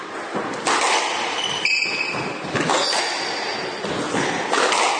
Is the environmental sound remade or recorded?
recorded